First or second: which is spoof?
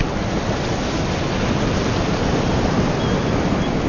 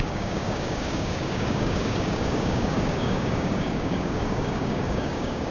second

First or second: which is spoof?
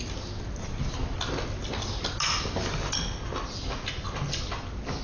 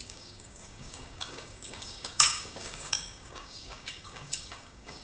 second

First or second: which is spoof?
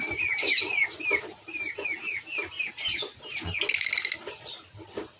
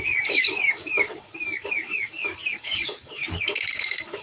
second